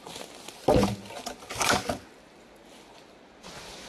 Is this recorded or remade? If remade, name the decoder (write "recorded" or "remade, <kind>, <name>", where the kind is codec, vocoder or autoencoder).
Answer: recorded